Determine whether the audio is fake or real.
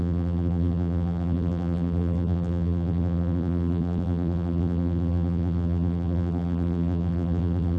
fake